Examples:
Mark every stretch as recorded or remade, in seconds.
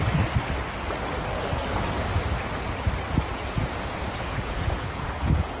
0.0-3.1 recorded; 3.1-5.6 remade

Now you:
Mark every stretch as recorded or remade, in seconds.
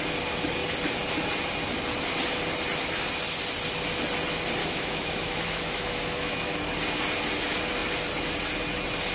0.0-4.6 recorded; 4.6-6.7 remade; 6.7-9.1 recorded